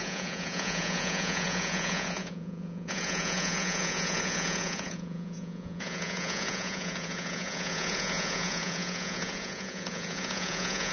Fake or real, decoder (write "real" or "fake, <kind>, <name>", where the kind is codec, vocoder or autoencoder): fake, vocoder, Vocos